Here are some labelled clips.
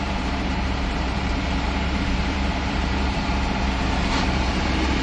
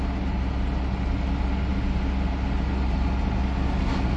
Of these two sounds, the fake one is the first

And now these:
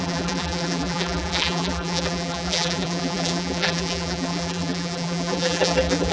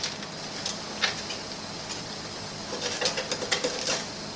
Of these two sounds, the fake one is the first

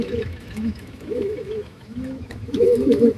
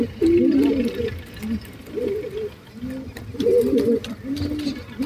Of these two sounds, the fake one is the first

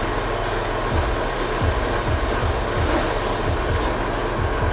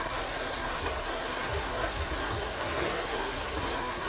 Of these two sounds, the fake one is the second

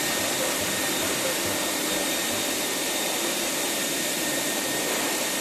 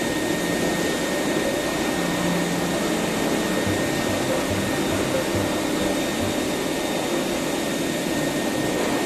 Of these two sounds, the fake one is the first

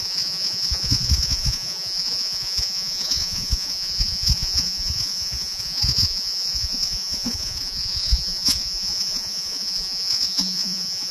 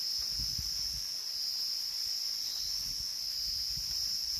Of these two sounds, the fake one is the first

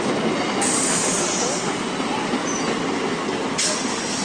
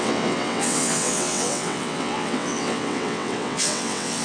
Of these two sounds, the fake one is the second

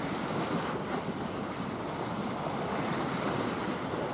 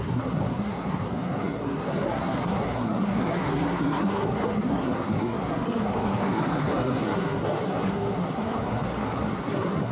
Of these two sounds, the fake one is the second